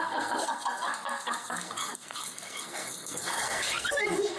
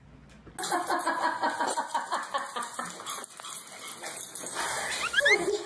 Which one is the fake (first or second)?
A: first